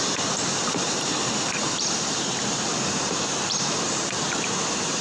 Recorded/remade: remade